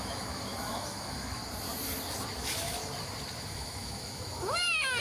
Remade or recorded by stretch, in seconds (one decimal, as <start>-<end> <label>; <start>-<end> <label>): 0.0-1.4 remade; 1.4-2.4 recorded; 2.4-2.8 remade; 2.8-3.4 recorded; 3.4-5.0 remade